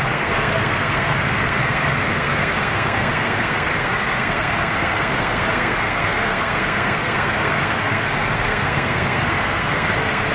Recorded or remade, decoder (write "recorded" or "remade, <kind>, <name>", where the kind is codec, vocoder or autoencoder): remade, codec, SNAC